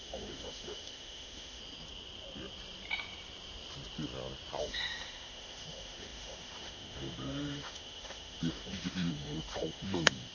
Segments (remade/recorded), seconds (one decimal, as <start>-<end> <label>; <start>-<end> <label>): 0.0-1.6 remade; 1.6-4.6 recorded; 4.6-10.3 remade